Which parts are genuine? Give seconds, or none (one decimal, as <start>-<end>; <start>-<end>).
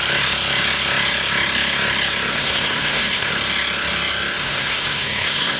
0.0-2.3; 3.3-4.4